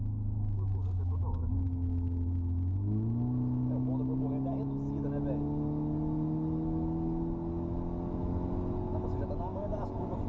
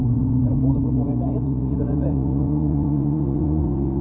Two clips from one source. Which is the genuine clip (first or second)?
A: first